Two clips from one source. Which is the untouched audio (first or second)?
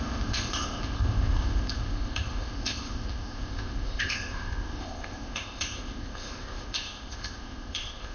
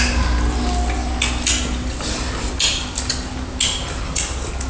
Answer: second